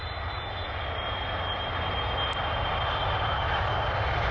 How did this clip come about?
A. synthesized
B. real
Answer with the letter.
B